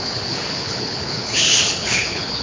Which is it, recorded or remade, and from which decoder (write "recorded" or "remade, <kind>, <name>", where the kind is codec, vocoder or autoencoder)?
remade, codec, HILCodec